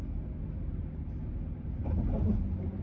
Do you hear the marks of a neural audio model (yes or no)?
no